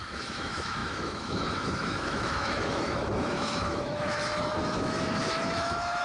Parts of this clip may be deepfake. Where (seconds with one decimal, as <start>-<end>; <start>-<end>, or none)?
0.0-6.0